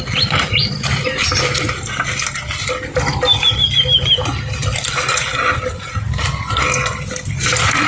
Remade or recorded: recorded